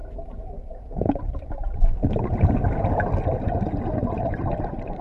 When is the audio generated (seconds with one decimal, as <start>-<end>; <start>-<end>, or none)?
1.2-1.6; 4.6-5.0